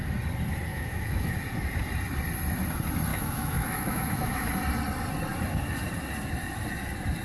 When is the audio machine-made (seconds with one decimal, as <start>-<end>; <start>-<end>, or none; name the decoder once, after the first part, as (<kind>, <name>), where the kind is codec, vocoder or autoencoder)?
0.7-1.3 (autoencoder, DAC-VAE); 3.1-4.5